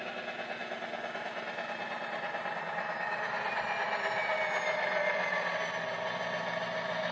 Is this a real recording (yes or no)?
yes